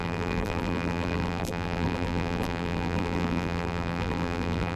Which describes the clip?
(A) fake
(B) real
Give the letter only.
A